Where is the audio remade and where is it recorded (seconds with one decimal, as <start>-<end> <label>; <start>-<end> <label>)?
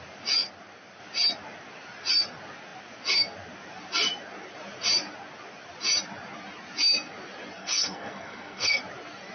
0.0-7.6 recorded; 7.6-8.8 remade; 8.8-9.3 recorded